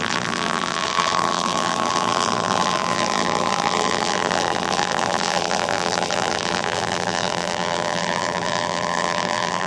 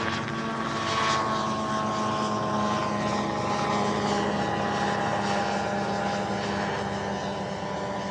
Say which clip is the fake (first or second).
first